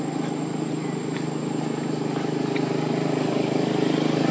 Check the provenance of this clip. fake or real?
real